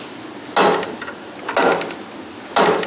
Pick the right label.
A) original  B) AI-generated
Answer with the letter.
A